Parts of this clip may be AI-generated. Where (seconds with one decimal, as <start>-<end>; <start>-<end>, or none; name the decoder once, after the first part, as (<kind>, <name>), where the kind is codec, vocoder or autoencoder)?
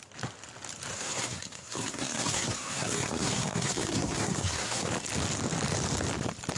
0.9-4.9 (codec, SNAC)